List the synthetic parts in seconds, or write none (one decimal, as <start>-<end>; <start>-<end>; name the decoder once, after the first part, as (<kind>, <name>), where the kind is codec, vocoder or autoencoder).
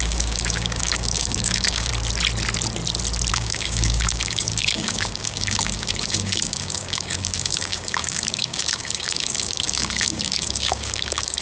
0.0-1.9 (codec, DAC); 3.3-11.4